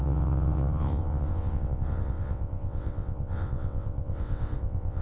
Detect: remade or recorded remade